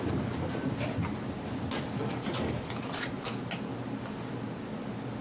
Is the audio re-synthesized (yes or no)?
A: no